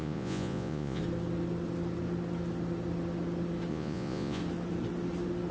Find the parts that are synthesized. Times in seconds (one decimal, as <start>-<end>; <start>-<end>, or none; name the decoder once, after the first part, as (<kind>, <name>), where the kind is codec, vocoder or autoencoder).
0.0-1.0 (vocoder, Vocos); 3.7-4.4